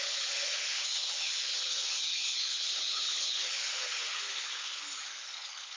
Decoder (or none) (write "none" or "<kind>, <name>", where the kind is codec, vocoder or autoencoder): codec, HILCodec